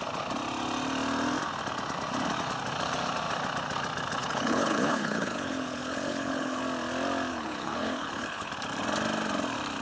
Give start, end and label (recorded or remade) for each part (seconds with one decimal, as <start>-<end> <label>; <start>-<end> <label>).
0.0-4.2 recorded; 4.2-6.6 remade; 6.6-7.3 recorded; 7.3-8.5 remade; 8.5-9.8 recorded